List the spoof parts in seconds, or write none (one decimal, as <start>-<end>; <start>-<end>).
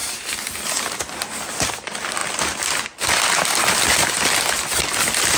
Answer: none